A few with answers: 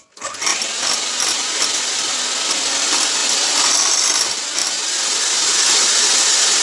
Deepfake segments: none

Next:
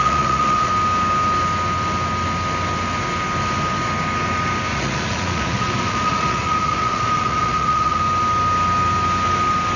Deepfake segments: 0.0-0.7 (vocoder, Vocos); 4.7-8.0

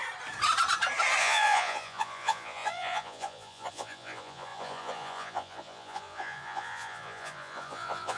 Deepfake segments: 1.2-8.2 (vocoder, Vocos)

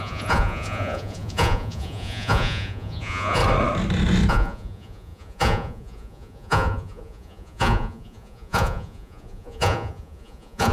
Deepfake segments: 0.0-3.4 (vocoder, Vocos); 4.3-10.7

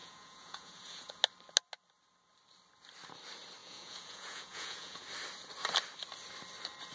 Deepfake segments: 0.0-1.2 (vocoder, Vocos); 3.6-5.0